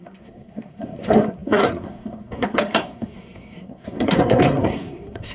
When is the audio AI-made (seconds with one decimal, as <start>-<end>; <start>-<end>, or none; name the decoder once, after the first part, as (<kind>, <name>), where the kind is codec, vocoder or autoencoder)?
0.0-5.3 (codec, SNAC)